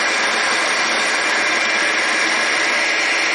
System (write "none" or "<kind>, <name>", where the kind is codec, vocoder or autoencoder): none